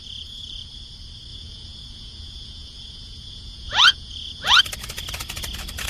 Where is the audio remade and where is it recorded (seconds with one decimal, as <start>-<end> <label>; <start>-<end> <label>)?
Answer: 0.0-0.7 remade; 0.7-1.3 recorded; 1.3-4.6 remade; 4.6-5.9 recorded